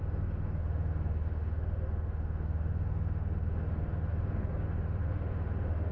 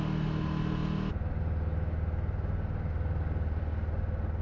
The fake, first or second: first